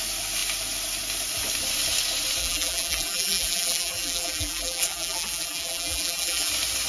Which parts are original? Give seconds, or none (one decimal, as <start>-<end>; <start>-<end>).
0.0-2.4; 6.5-6.9